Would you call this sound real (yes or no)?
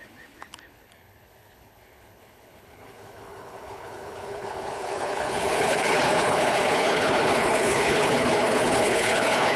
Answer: no